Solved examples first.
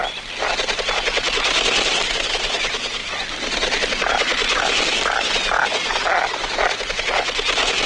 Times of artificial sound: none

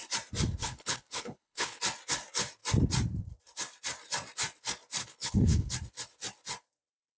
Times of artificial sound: 0.6-1.8; 5.0-5.7

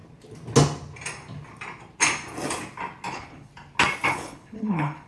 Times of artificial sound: 3.1-3.5; 4.1-5.1

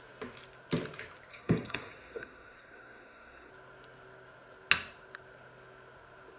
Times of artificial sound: 1.3-3.5

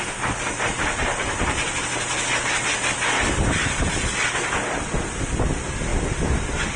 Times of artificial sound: none

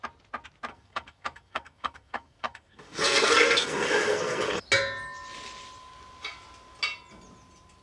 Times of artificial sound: 0.7-4.6

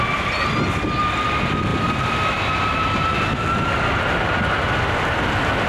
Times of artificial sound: none

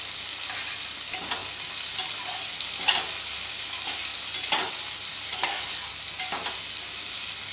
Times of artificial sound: none